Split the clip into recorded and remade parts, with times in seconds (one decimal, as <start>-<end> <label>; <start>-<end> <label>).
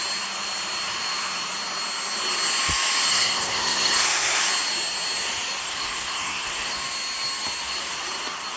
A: 0.0-3.1 recorded; 3.1-4.4 remade; 4.4-5.6 recorded; 5.6-6.7 remade; 6.7-8.6 recorded